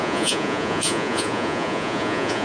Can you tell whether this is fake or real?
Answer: fake